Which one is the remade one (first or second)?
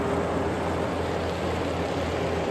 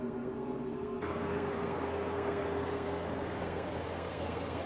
second